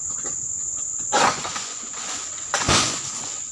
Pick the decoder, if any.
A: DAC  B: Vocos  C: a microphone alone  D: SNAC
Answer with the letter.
B